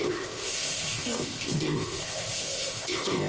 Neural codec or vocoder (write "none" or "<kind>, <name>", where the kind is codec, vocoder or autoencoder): codec, ZipCodec